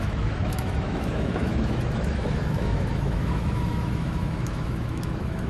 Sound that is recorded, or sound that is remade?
remade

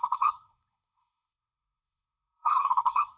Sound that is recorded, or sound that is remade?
remade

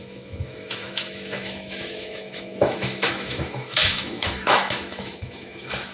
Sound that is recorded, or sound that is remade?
remade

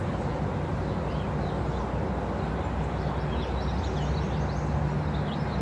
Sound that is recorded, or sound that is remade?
recorded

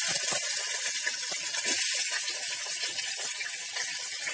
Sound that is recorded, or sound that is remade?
recorded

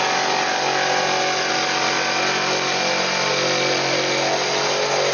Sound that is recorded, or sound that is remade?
recorded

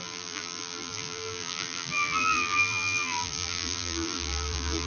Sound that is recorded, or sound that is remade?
remade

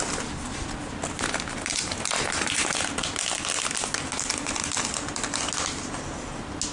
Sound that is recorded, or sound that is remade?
recorded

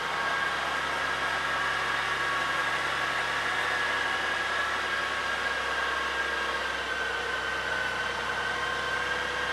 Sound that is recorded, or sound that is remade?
recorded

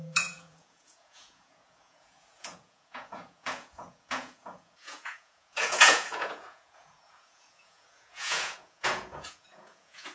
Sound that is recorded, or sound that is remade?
remade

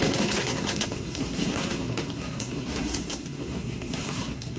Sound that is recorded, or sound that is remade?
remade